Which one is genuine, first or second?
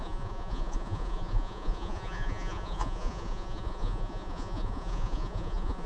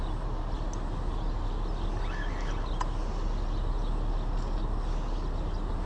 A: second